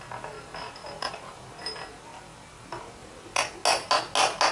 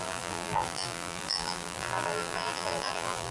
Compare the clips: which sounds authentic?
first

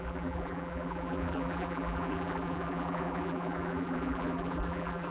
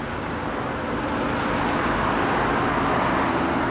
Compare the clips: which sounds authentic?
second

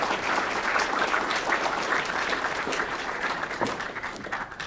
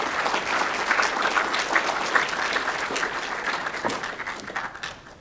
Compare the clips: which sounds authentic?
second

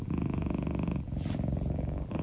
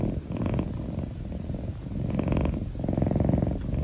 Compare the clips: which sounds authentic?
second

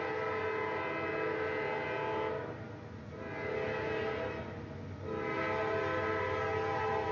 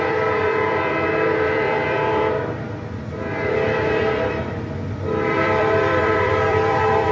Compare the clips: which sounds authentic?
first